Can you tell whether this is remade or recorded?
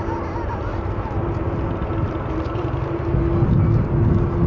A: recorded